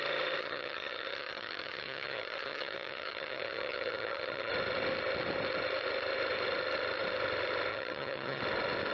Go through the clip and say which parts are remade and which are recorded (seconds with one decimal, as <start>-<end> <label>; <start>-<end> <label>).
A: 0.0-0.4 recorded; 0.4-4.5 remade; 4.5-7.7 recorded; 7.7-8.4 remade; 8.4-8.9 recorded